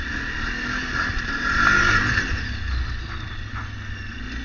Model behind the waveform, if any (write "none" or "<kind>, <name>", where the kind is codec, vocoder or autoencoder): none